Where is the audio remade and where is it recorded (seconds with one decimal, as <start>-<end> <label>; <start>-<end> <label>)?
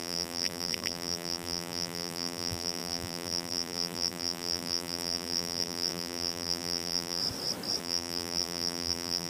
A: 0.0-7.2 remade; 7.2-7.8 recorded; 7.8-9.3 remade